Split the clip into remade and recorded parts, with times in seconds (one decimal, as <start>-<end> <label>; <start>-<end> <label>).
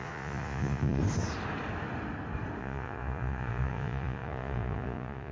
0.0-1.0 remade; 1.0-2.6 recorded; 2.6-5.3 remade